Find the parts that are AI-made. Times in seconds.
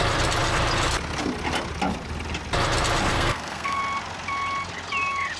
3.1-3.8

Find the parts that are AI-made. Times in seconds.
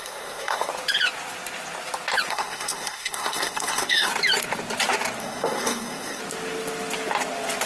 0.0-0.7; 2.3-4.1; 5.2-6.2